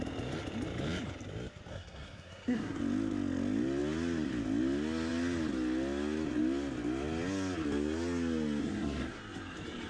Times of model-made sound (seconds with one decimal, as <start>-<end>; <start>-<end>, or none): 1.7-2.8; 8.6-9.2